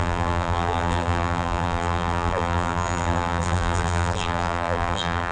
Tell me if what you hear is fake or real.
fake